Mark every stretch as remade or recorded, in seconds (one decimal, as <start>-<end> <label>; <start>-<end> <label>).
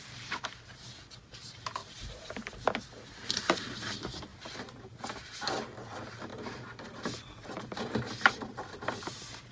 0.0-4.3 recorded; 4.3-5.2 remade; 5.2-6.3 recorded; 6.3-8.9 remade; 8.9-9.5 recorded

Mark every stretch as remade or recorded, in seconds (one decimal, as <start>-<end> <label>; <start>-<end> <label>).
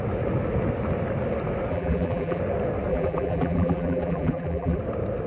0.0-1.7 recorded; 1.7-2.4 remade; 2.4-2.9 recorded; 2.9-4.8 remade; 4.8-5.3 recorded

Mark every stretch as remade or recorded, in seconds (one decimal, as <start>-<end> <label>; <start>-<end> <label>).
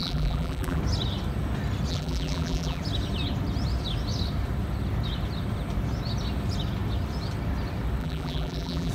0.0-0.8 remade; 0.8-1.9 recorded; 1.9-2.8 remade; 2.8-8.0 recorded; 8.0-8.9 remade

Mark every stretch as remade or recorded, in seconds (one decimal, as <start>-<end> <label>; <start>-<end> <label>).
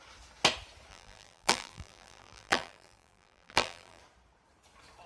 0.0-0.9 recorded; 0.9-4.0 remade; 4.0-5.1 recorded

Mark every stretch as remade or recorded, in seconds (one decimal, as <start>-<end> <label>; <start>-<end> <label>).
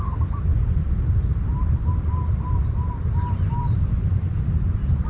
0.0-0.5 remade; 0.5-3.6 recorded; 3.6-5.1 remade